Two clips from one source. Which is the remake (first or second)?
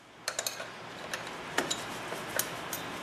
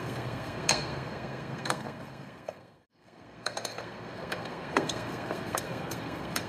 second